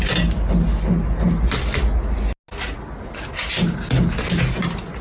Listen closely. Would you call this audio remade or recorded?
recorded